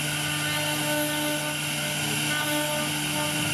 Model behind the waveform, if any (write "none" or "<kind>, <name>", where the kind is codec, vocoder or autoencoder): none